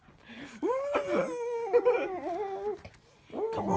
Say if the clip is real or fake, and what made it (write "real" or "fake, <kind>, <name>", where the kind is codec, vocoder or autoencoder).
real